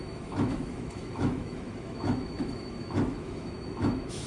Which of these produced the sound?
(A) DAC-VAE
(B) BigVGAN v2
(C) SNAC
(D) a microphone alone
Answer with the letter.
A